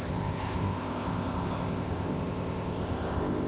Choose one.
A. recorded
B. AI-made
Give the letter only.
B